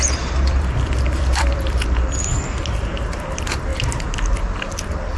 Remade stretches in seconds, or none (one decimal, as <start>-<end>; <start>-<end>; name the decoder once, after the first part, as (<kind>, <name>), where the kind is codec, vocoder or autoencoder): 0.0-2.3 (vocoder, BigVGAN v2); 3.1-3.7